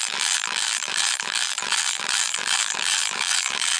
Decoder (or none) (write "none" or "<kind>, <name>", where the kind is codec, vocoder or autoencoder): vocoder, BigVGAN v2